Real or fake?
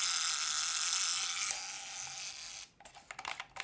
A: real